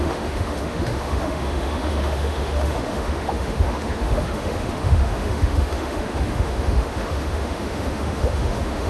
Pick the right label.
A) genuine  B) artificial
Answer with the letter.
B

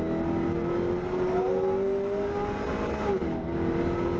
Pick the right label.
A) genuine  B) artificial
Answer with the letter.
A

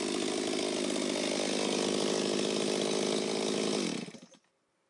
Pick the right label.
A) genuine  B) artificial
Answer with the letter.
A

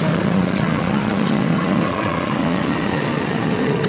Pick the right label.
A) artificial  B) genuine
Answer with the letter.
A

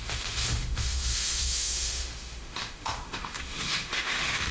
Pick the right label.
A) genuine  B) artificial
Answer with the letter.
B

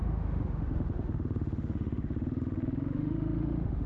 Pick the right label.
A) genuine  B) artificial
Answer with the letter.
B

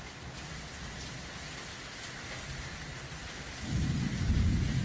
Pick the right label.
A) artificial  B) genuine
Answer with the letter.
B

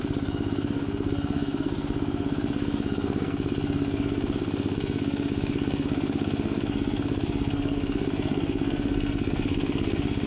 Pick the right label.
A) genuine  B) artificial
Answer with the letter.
B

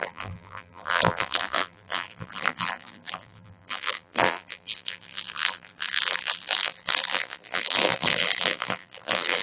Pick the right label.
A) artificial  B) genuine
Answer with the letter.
A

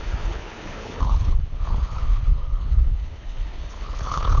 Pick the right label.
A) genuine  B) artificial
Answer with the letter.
B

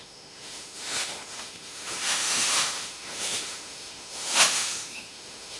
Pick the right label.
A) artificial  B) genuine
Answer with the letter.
A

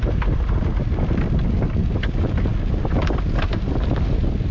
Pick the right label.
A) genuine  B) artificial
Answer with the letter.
A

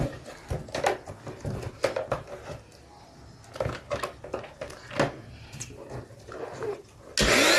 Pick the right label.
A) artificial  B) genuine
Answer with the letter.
B